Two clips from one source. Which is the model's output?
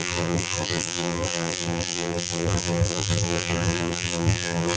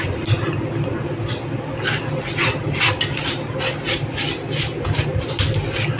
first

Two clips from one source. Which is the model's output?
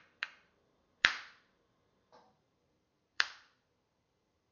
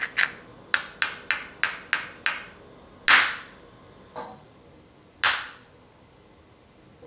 first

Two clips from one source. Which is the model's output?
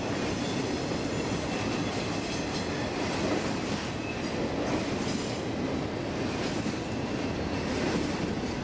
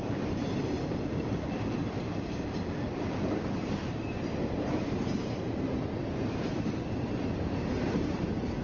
second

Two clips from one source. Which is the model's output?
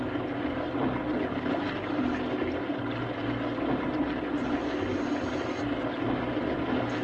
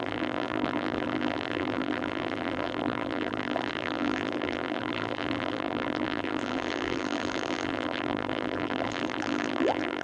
second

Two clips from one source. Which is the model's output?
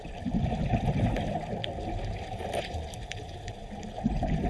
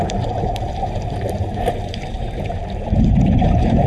second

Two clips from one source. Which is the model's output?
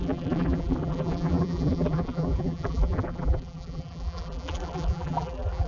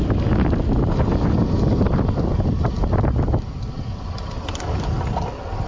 first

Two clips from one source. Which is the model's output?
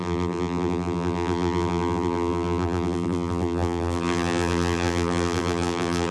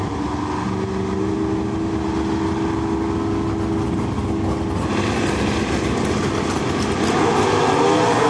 first